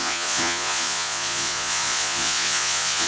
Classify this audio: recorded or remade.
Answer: remade